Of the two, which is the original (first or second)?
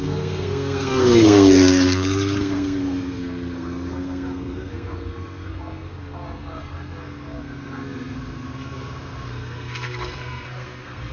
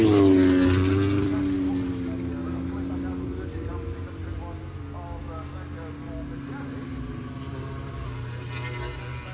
second